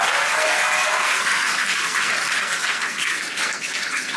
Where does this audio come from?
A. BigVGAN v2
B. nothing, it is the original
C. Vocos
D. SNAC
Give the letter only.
D